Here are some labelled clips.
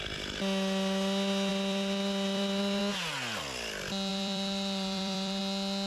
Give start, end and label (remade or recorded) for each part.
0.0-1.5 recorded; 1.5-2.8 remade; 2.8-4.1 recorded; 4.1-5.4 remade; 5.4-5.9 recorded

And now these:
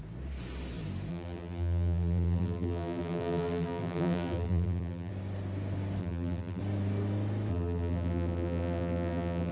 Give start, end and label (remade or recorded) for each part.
0.0-1.1 recorded; 1.1-5.1 remade; 5.1-6.0 recorded; 6.0-6.6 remade; 6.6-7.5 recorded; 7.5-9.5 remade

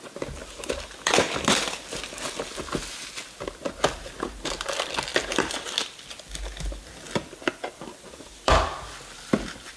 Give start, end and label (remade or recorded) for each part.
0.0-0.4 recorded; 0.4-2.6 remade; 2.6-5.1 recorded; 5.1-8.5 remade; 8.5-9.8 recorded

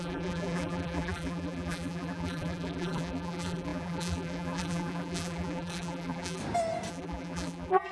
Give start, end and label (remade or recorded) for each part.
0.0-6.4 remade; 6.4-6.9 recorded; 6.9-7.9 remade

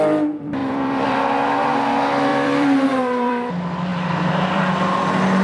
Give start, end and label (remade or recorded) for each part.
0.0-0.6 recorded; 0.6-1.2 remade; 1.2-2.3 recorded; 2.3-3.5 remade; 3.5-3.9 recorded; 3.9-4.7 remade; 4.7-5.4 recorded

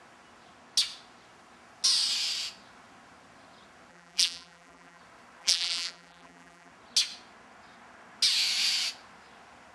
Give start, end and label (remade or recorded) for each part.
0.0-3.9 recorded; 3.9-5.0 remade; 5.0-5.4 recorded; 5.4-6.7 remade; 6.7-9.7 recorded